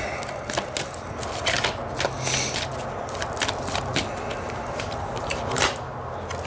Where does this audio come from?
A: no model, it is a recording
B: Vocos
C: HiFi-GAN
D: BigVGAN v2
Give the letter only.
A